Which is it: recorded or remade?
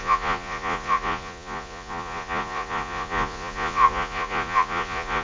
remade